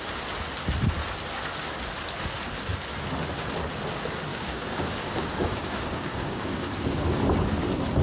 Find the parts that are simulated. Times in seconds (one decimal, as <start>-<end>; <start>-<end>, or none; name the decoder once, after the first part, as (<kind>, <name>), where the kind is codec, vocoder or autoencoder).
4.3-7.2 (codec, DAC)